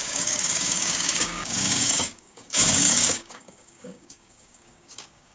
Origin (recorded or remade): remade